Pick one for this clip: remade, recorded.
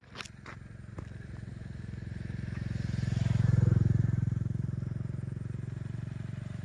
recorded